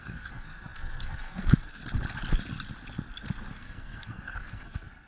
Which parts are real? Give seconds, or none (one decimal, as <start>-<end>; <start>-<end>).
1.8-3.5